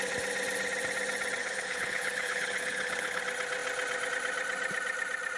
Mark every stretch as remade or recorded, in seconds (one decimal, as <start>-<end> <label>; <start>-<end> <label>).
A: 0.0-1.4 recorded; 1.4-3.2 remade; 3.2-5.4 recorded